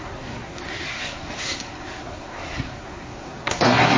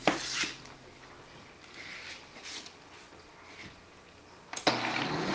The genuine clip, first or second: second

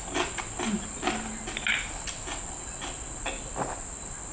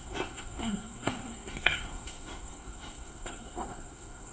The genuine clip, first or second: first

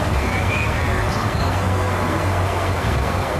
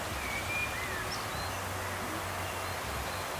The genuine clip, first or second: second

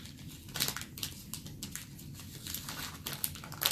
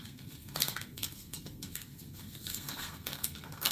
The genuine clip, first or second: first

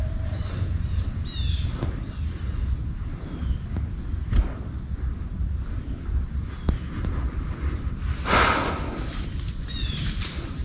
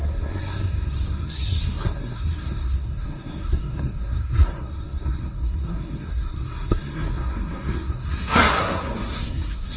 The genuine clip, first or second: first